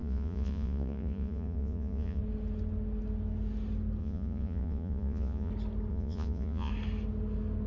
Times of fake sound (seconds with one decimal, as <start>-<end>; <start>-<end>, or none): 0.0-2.2; 4.0-5.5; 5.9-6.7